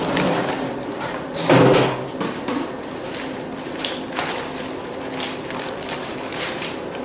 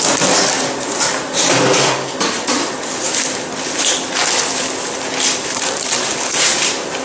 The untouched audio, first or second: second